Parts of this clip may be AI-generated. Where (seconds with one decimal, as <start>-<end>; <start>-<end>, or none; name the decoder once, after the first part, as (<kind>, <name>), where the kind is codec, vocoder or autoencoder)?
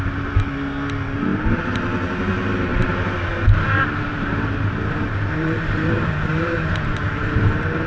1.3-1.8 (vocoder, BigVGAN v2); 2.7-7.4